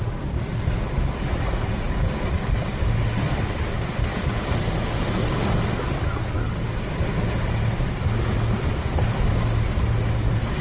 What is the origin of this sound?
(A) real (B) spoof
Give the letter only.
A